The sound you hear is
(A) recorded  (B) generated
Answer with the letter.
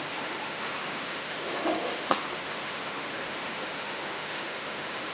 B